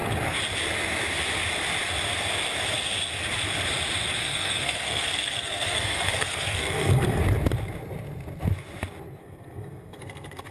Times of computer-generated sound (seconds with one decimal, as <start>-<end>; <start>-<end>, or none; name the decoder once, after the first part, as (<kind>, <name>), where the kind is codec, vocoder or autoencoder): 4.2-7.2 (codec, SNAC); 9.2-10.5